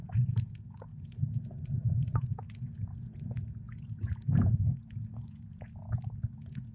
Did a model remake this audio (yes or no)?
yes